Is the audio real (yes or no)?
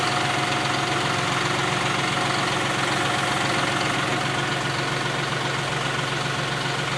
yes